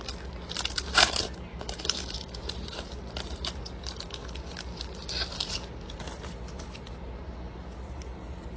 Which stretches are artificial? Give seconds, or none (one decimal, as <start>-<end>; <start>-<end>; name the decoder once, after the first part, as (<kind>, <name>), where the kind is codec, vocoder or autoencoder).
1.5-2.4 (autoencoder, DAC-VAE)